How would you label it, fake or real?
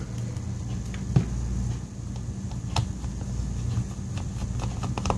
real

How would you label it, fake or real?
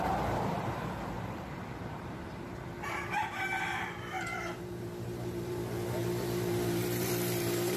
fake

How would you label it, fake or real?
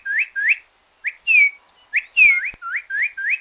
real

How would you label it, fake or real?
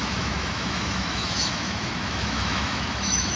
fake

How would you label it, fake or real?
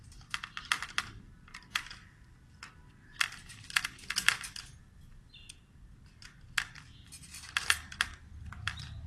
real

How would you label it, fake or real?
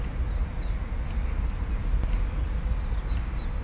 real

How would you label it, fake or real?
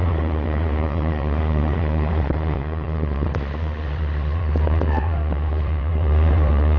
fake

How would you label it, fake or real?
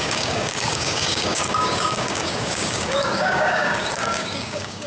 fake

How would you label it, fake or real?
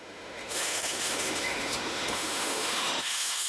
fake